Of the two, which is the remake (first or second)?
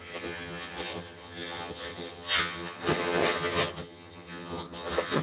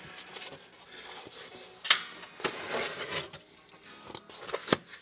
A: first